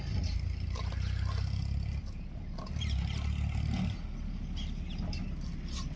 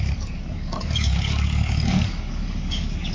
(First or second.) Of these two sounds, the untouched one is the first